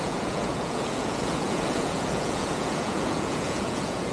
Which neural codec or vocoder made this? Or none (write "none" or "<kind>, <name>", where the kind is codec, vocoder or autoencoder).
vocoder, Vocos